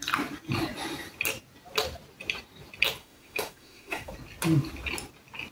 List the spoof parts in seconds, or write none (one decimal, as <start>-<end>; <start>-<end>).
3.0-4.1